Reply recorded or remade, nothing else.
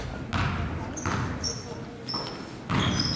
recorded